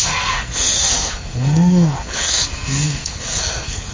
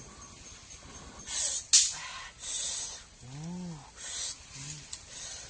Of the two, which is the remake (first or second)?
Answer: first